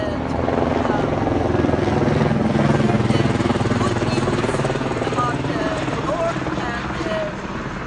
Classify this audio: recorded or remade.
recorded